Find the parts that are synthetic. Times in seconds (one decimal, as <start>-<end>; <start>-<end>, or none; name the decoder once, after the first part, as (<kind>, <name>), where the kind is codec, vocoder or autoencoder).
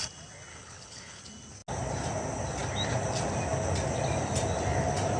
0.5-1.2 (codec, HILCodec)